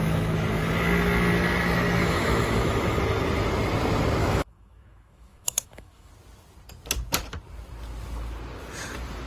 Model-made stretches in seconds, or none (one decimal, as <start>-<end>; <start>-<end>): 2.0-3.0; 4.2-6.1